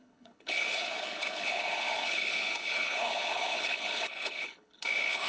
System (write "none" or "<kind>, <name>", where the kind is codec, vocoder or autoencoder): codec, HILCodec